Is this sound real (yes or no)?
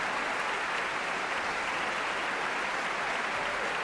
yes